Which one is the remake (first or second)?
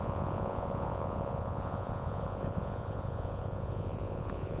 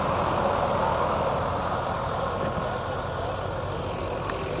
first